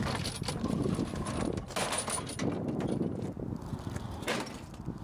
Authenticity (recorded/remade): recorded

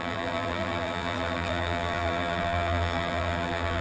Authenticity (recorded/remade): remade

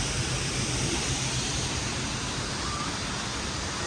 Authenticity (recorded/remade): remade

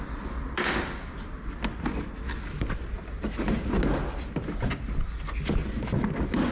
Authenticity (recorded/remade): recorded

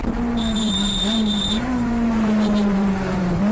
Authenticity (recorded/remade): remade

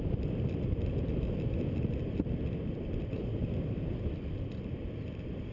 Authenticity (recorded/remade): remade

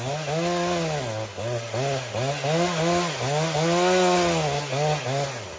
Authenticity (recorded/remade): recorded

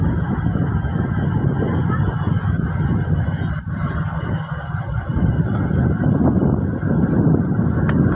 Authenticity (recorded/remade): recorded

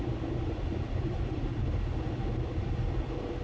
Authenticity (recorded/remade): recorded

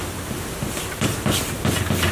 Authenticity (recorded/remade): recorded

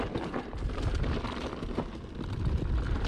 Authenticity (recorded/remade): remade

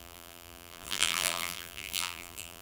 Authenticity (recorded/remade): remade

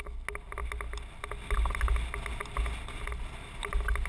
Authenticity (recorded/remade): recorded